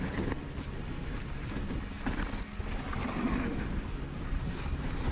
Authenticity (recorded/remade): recorded